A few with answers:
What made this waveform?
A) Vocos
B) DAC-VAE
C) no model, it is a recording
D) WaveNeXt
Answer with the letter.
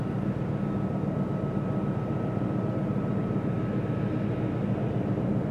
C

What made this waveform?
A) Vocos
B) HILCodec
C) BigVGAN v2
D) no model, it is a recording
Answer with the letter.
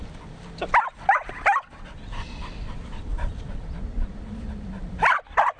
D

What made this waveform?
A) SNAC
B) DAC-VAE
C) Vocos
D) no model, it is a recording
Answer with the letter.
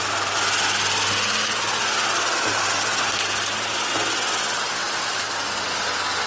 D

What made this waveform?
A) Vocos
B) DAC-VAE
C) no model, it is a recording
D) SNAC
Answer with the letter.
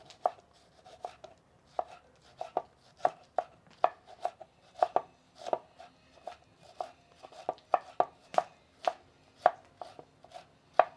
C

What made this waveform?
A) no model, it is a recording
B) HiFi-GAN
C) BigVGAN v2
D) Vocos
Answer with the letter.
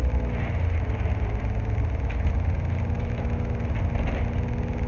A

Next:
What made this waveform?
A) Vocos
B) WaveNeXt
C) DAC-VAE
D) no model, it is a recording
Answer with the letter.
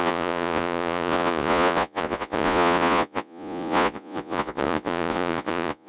A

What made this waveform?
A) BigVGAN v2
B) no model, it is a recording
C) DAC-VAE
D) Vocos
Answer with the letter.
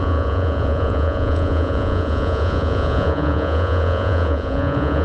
D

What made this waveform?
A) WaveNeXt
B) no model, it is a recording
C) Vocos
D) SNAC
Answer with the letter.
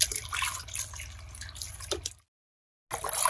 B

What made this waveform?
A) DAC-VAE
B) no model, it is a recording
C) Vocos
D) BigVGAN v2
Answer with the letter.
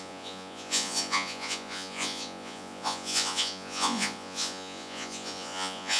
C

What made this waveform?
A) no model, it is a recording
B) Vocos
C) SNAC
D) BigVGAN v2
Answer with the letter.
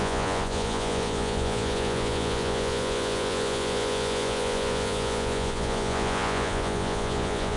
B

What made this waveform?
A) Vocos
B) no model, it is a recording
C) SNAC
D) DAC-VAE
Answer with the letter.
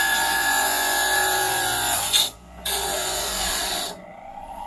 A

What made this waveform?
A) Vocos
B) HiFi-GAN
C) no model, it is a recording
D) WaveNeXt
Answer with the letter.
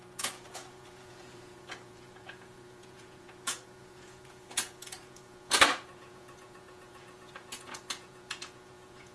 A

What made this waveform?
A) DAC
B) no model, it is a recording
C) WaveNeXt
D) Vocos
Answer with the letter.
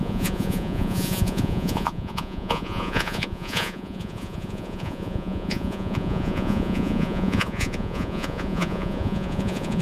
D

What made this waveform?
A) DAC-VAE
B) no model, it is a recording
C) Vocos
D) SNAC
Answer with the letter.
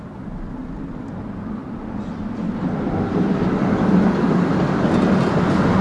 B